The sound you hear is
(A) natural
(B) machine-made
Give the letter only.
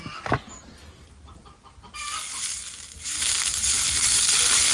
A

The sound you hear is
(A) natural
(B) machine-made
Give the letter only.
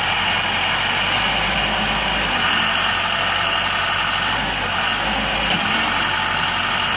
A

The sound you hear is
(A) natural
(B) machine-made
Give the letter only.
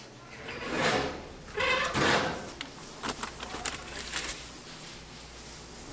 A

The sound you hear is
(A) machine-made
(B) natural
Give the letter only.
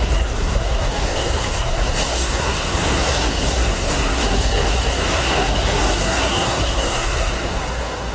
A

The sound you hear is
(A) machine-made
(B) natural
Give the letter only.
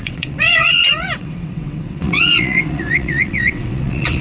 A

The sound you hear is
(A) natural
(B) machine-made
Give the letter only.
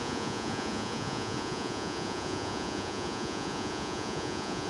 B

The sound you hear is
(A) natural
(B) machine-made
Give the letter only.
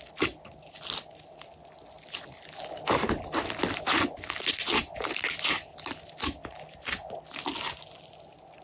A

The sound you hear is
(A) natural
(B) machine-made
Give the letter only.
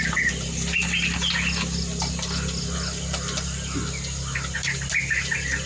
A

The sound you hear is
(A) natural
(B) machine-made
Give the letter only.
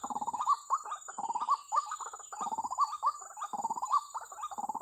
A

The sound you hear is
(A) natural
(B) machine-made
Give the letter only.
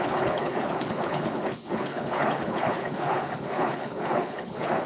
B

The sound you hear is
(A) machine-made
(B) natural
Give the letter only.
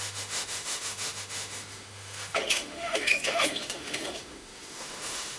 A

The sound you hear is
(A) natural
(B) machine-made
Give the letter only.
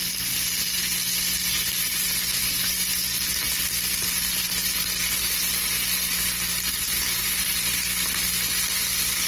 A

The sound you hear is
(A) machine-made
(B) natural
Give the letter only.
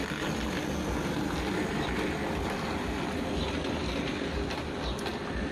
B